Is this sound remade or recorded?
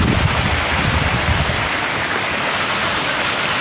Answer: recorded